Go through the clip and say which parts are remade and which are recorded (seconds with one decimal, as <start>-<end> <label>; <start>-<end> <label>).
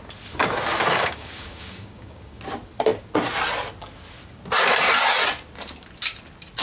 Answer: 0.0-0.7 recorded; 0.7-2.4 remade; 2.4-6.6 recorded